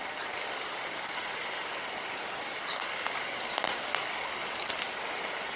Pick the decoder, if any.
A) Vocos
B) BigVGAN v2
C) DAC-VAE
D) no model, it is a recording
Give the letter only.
B